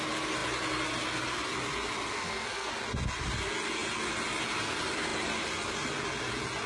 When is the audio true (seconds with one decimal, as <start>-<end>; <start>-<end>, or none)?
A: 0.0-2.1; 2.7-6.7